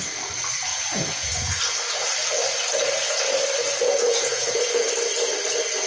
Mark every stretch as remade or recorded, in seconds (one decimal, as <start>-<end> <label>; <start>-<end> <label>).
0.0-0.7 recorded; 0.7-1.6 remade; 1.6-3.6 recorded; 3.6-4.9 remade; 4.9-5.9 recorded